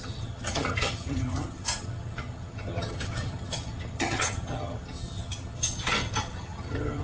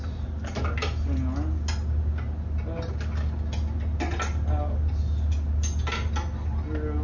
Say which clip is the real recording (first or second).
second